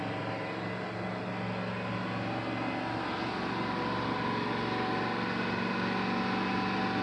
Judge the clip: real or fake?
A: real